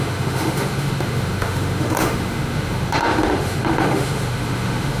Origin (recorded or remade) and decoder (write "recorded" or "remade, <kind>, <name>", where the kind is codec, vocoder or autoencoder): remade, autoencoder, DAC-VAE